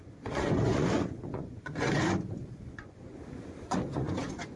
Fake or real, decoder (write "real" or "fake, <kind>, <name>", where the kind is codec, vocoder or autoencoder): fake, vocoder, Vocos